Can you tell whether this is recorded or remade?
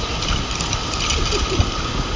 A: recorded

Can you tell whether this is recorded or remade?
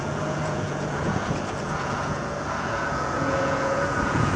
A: remade